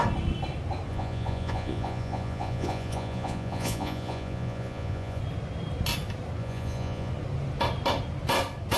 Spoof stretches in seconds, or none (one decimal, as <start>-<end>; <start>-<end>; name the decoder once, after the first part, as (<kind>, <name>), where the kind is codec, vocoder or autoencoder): 0.9-5.2 (vocoder, Vocos); 6.4-7.1